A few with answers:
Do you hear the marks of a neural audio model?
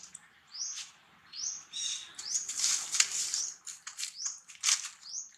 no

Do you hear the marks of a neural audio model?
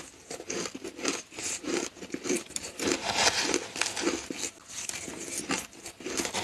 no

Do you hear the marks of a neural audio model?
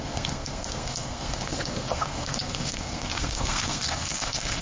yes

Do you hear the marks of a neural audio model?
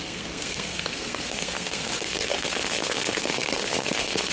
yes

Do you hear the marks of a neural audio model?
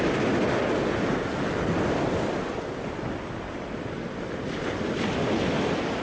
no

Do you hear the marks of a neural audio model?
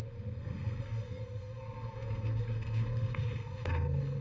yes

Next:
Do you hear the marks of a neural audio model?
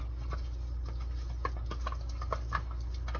no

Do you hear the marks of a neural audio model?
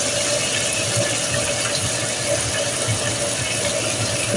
no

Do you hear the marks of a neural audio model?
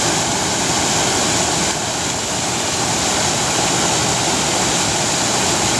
no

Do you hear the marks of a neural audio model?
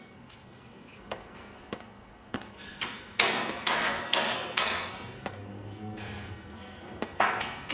yes